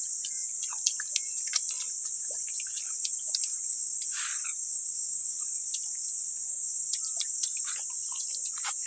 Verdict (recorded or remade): recorded